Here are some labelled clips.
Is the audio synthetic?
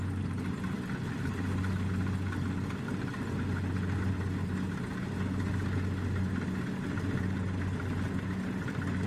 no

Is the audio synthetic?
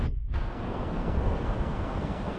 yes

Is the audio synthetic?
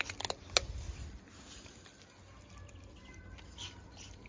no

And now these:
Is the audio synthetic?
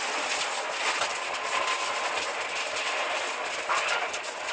no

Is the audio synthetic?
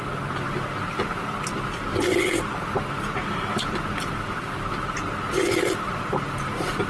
no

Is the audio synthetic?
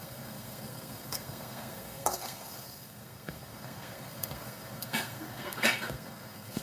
yes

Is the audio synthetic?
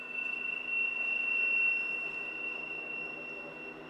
no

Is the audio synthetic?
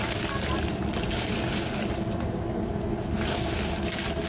no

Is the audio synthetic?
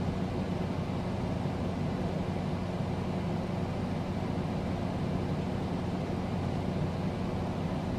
no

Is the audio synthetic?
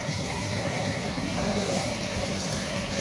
yes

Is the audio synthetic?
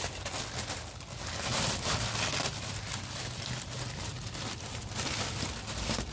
no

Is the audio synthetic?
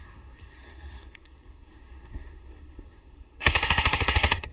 yes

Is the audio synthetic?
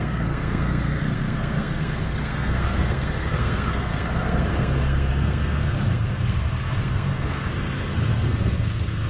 yes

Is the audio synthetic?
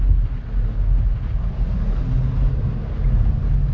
no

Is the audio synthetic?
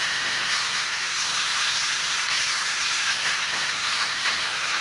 yes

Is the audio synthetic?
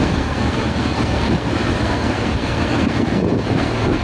yes